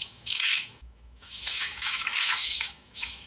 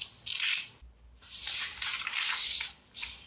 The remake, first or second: first